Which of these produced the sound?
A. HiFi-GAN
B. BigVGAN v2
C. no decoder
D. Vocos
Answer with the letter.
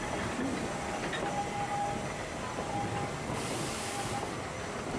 C